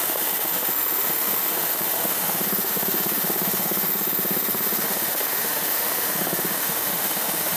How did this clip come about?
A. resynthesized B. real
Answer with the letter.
A